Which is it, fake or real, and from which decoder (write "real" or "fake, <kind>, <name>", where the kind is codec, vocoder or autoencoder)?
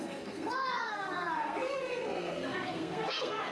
fake, codec, SNAC